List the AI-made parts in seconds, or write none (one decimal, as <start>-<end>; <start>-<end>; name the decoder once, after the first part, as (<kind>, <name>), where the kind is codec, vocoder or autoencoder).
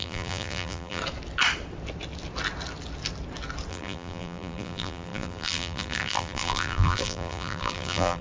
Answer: 0.0-1.0 (vocoder, BigVGAN v2); 3.7-8.2